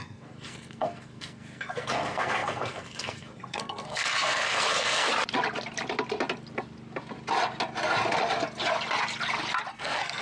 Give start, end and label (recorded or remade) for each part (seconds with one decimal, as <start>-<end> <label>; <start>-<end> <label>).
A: 0.0-5.1 remade; 5.1-9.7 recorded; 9.7-10.2 remade